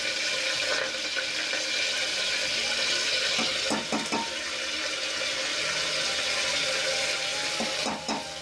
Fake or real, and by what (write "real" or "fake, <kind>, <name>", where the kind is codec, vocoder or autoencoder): real